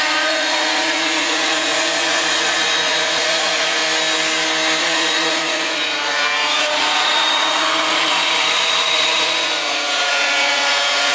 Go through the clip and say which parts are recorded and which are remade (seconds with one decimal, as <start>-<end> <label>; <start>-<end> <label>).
0.0-3.8 remade; 3.8-4.8 recorded; 4.8-11.1 remade